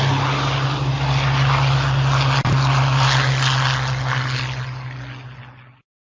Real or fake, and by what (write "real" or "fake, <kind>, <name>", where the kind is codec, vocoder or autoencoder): real